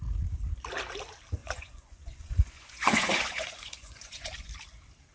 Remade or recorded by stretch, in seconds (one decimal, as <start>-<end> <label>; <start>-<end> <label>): 0.0-1.4 recorded; 1.4-4.5 remade; 4.5-5.1 recorded